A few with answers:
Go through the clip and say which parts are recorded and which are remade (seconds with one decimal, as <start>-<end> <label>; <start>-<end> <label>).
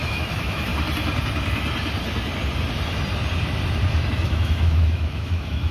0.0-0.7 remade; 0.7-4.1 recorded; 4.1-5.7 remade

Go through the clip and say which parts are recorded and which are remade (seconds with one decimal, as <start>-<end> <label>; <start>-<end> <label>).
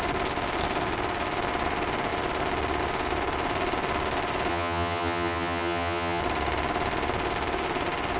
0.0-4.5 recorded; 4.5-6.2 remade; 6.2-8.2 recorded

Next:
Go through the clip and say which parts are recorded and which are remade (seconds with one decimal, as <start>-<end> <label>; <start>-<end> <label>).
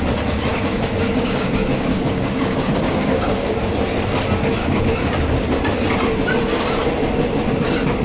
0.0-0.5 recorded; 0.5-3.5 remade; 3.5-4.6 recorded; 4.6-5.1 remade; 5.1-8.0 recorded